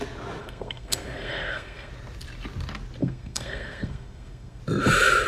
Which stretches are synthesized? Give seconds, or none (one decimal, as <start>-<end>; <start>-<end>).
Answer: 0.4-1.9; 3.0-4.6